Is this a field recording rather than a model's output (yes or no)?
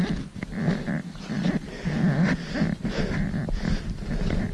yes